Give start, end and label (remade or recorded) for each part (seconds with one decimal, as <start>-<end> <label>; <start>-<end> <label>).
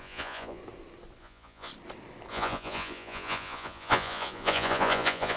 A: 0.0-0.6 remade; 0.6-1.2 recorded; 1.2-1.7 remade; 1.7-2.3 recorded; 2.3-5.4 remade